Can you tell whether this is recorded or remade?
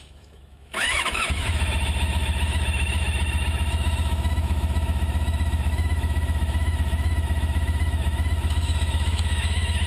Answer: remade